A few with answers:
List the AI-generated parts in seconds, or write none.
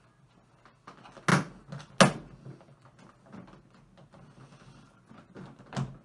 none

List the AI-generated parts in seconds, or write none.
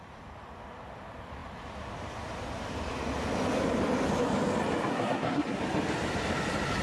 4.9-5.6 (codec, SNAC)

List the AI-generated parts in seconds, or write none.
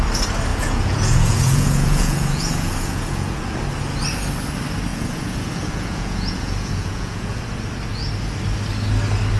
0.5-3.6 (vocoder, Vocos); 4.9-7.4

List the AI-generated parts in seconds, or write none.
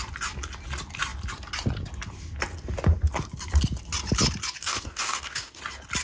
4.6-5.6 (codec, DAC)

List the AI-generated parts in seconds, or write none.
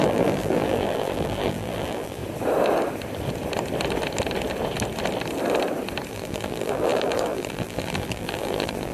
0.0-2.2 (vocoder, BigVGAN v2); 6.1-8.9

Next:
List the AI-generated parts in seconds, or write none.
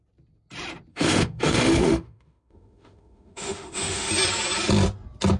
0.9-4.1 (autoencoder, DAC-VAE)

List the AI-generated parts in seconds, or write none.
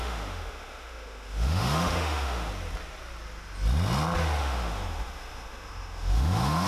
0.0-2.5 (autoencoder, DAC-VAE); 4.4-6.7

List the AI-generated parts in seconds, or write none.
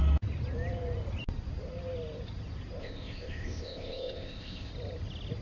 2.8-4.7 (codec, ZipCodec)